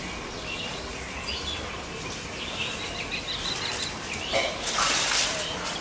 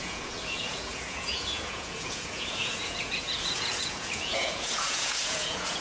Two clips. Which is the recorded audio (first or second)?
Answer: first